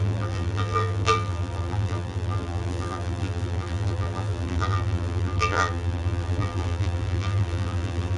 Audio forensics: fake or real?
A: fake